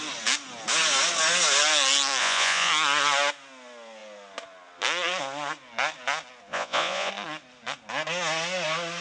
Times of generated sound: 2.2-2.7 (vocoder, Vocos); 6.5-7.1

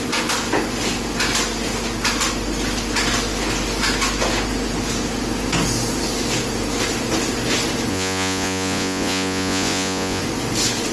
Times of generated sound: 7.9-10.2 (vocoder, Vocos)

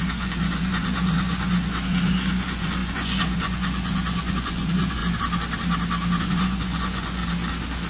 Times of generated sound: 0.0-5.0 (vocoder, Vocos); 6.2-7.2

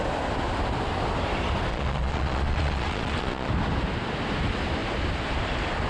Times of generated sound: 1.7-3.5 (vocoder, Vocos)

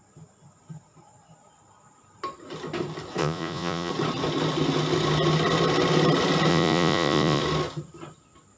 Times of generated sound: 3.2-3.9 (vocoder, Vocos); 6.5-7.4

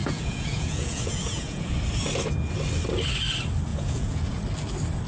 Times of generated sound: 0.0-1.7 (vocoder, Vocos); 3.7-4.4